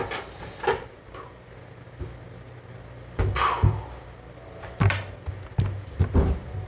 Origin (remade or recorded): recorded